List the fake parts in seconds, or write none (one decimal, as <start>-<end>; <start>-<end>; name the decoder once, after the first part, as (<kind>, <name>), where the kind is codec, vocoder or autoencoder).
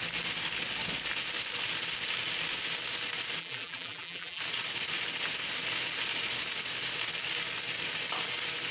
3.4-4.4 (vocoder, BigVGAN v2)